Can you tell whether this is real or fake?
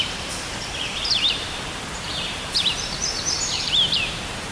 fake